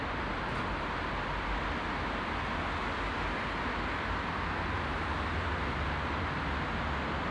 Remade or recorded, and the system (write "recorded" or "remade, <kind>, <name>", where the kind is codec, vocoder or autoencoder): recorded